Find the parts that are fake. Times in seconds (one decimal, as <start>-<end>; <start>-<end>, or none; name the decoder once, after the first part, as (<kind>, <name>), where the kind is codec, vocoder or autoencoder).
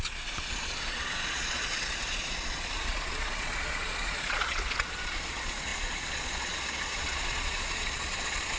0.0-8.6 (vocoder, Vocos)